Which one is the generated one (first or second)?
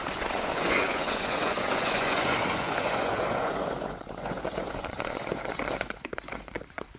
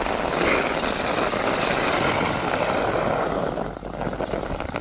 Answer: first